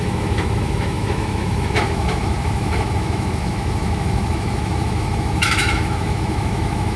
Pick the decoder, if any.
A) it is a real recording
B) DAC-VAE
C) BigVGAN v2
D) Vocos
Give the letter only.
B